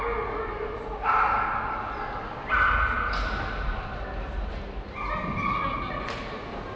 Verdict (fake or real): real